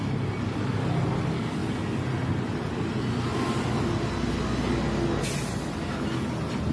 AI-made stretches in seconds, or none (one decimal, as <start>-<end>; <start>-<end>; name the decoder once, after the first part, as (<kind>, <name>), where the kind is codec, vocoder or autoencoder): none